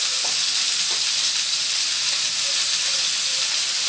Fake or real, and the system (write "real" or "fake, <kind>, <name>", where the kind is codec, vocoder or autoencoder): real